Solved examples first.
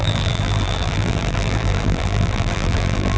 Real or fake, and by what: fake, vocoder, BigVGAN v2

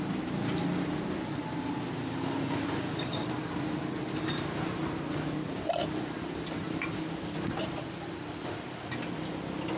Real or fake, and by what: real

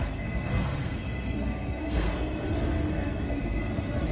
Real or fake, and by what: fake, codec, SNAC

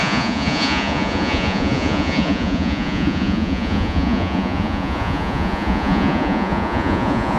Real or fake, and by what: fake, vocoder, Vocos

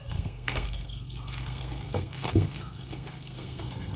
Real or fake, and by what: fake, codec, SNAC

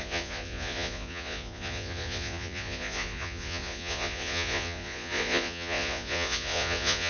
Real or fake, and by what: fake, vocoder, Vocos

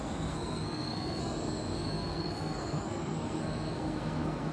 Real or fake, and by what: fake, codec, SNAC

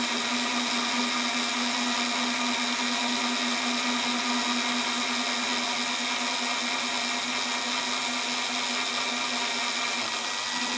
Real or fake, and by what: real